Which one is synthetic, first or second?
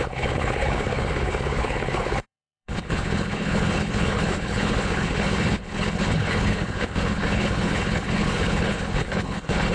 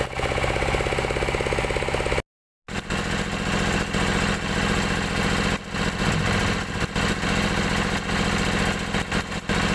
first